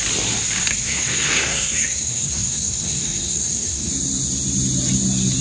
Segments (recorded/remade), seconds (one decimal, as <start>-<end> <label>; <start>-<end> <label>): 0.0-0.7 recorded; 0.7-3.9 remade; 3.9-5.4 recorded